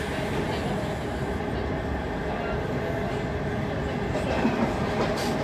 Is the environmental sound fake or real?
real